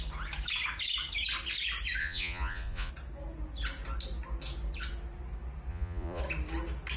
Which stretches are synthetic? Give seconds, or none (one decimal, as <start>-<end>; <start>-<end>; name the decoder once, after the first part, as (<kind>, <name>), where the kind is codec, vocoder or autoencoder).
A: 2.0-2.9 (vocoder, Vocos); 5.7-6.2